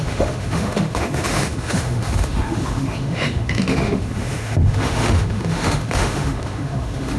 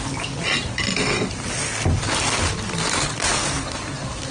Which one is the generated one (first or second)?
first